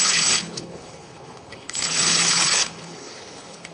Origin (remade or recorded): remade